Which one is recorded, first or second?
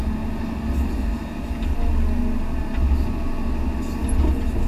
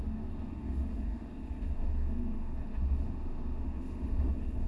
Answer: first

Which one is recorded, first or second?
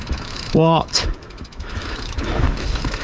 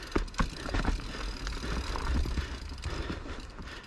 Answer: second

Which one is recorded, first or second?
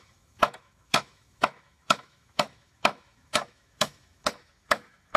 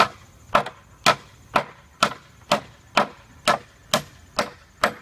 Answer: second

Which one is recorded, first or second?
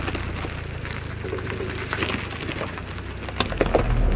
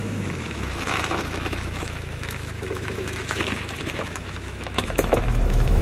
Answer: first